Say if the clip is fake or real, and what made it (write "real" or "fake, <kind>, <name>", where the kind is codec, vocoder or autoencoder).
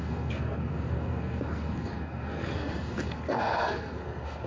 fake, codec, SNAC